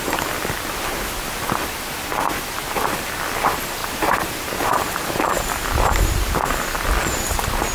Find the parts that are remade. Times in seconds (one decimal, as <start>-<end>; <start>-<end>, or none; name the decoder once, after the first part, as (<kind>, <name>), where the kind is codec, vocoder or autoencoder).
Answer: 3.8-6.3 (vocoder, BigVGAN v2)